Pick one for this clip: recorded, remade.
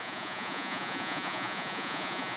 remade